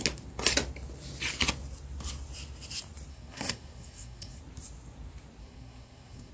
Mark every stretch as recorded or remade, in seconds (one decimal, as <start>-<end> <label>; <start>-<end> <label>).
0.0-3.1 recorded; 3.1-4.4 remade; 4.4-5.4 recorded; 5.4-6.3 remade